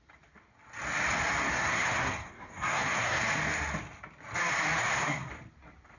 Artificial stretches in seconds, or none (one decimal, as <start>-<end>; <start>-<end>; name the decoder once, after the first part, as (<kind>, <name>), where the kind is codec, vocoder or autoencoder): 1.5-3.2 (codec, SNAC); 4.8-5.3